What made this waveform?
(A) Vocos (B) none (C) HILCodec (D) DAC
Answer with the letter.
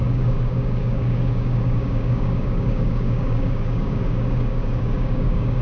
D